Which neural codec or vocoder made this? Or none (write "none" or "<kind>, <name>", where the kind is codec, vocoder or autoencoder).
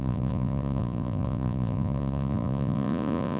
vocoder, Vocos